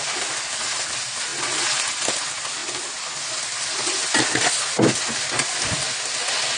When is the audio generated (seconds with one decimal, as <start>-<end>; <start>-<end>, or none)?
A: none